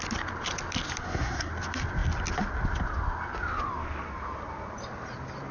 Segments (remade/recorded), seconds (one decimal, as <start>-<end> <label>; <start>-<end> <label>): 0.0-1.0 recorded; 1.0-1.5 remade; 1.5-5.5 recorded